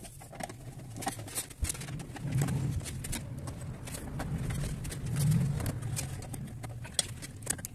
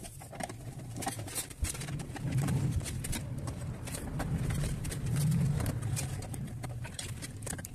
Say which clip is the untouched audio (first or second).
first